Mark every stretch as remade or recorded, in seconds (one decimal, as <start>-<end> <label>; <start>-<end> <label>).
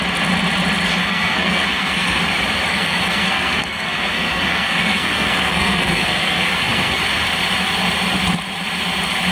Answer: 0.0-1.0 recorded; 1.0-2.2 remade; 2.2-2.7 recorded; 2.7-7.0 remade; 7.0-9.3 recorded